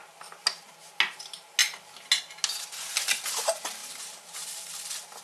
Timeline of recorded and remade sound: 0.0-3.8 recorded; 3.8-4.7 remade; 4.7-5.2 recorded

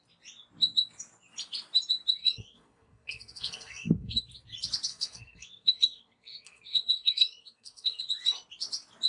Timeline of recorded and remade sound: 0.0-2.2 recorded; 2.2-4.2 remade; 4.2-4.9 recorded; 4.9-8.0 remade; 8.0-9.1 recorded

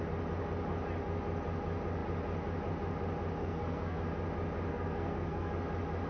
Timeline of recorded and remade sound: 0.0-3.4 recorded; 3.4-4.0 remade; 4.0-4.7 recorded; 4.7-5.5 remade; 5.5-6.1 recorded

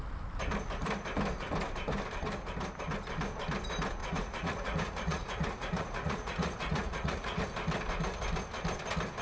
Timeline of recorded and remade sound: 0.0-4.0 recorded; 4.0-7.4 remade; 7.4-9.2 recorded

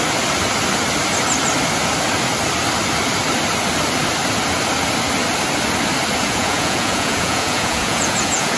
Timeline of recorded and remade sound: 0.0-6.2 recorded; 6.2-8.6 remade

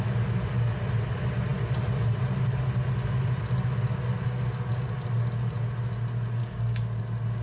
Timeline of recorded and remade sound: 0.0-6.4 recorded; 6.4-7.0 remade; 7.0-7.4 recorded

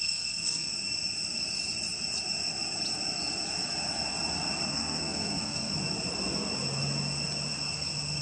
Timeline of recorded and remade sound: 0.0-0.7 remade; 0.7-4.7 recorded; 4.7-5.7 remade; 5.7-8.2 recorded

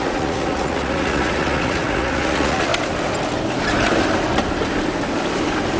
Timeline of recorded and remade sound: 0.0-2.7 remade; 2.7-5.8 recorded